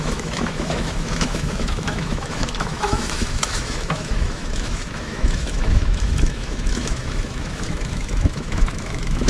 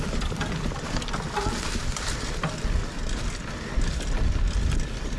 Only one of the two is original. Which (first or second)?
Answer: second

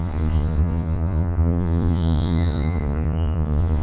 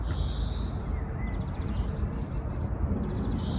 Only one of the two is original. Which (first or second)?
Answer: second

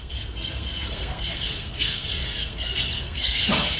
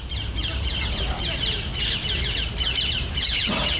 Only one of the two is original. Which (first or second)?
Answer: second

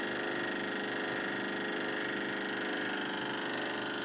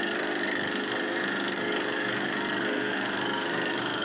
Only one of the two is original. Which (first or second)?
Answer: first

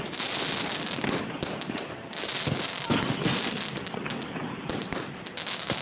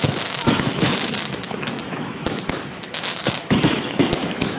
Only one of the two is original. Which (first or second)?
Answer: first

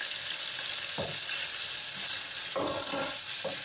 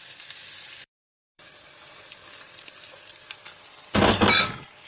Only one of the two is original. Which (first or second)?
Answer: first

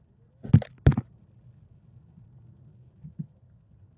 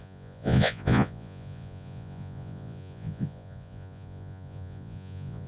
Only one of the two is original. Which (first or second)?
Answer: first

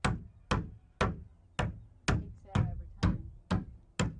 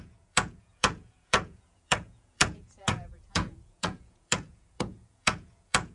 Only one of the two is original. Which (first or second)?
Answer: first